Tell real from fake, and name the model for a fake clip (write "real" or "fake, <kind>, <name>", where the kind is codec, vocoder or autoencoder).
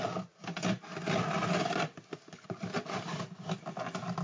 real